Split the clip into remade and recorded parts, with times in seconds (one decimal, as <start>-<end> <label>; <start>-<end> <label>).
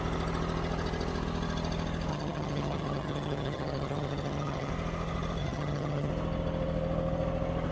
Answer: 0.0-2.1 recorded; 2.1-4.7 remade; 4.7-5.4 recorded; 5.4-6.1 remade; 6.1-7.7 recorded